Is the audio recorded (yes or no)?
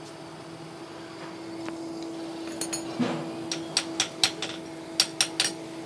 yes